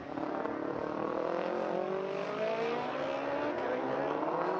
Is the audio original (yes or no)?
yes